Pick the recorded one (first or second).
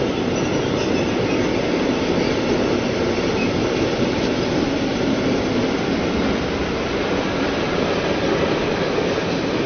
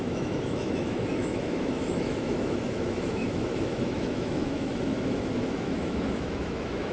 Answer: first